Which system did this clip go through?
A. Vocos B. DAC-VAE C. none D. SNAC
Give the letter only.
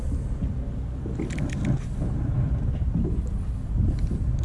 C